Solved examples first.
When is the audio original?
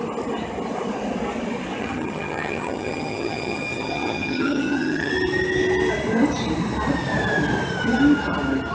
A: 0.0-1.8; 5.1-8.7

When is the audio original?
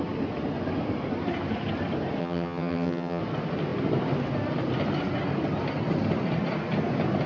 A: 0.0-2.2; 3.2-7.3